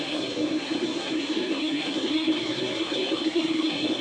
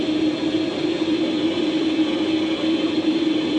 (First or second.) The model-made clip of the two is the first